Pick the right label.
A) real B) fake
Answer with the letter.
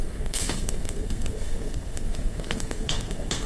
B